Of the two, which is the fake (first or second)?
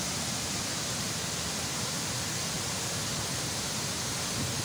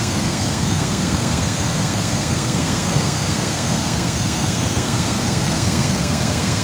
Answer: second